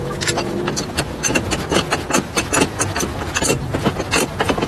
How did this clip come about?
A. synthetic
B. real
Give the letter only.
A